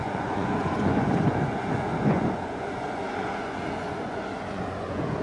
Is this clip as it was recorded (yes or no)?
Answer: no